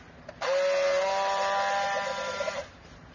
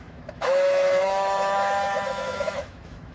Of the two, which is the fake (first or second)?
second